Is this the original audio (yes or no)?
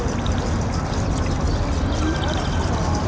yes